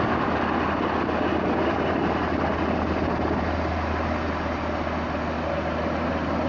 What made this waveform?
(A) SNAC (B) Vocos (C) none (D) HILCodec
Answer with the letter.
C